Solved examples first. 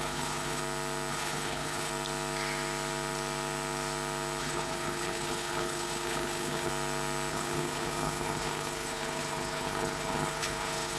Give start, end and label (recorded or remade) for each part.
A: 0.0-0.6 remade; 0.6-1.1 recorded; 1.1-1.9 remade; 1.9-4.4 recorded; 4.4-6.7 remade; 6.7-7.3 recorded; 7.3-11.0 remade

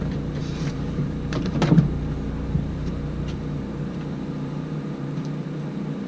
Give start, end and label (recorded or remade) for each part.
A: 0.0-6.1 remade

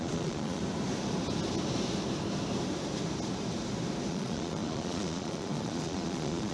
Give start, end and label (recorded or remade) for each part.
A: 0.0-0.6 remade; 0.6-4.1 recorded; 4.1-6.5 remade

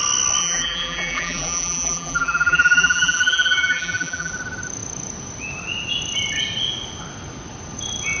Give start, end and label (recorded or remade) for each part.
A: 0.0-0.4 recorded; 0.4-4.3 remade; 4.3-8.2 recorded